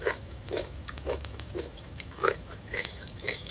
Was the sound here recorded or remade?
remade